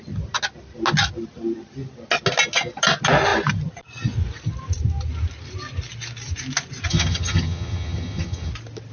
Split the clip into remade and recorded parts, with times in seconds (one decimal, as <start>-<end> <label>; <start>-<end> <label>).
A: 0.0-6.9 recorded; 6.9-8.5 remade; 8.5-8.9 recorded